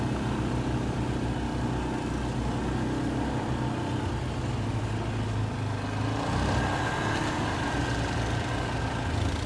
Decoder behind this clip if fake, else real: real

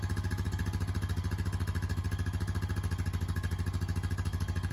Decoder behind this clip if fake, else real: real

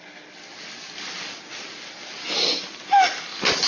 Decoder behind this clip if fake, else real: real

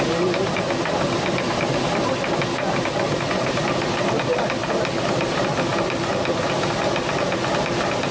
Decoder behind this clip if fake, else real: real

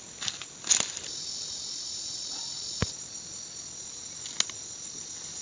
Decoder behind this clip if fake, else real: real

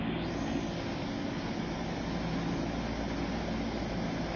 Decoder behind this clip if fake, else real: real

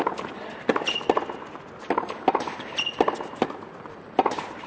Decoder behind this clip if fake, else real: real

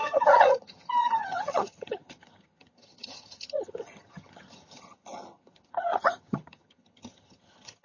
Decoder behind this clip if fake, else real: fake, vocoder, HiFi-GAN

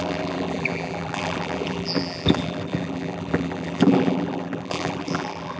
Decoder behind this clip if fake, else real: fake, vocoder, BigVGAN v2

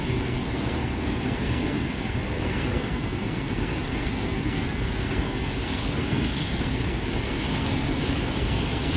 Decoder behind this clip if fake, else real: fake, codec, SNAC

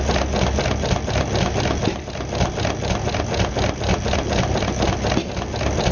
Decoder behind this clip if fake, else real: real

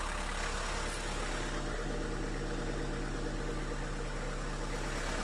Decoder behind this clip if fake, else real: real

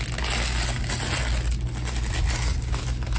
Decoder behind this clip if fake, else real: real